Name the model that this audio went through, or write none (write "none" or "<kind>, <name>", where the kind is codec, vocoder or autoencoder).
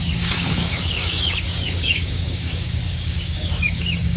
codec, DAC